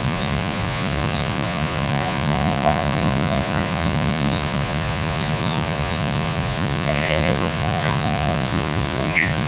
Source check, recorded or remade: remade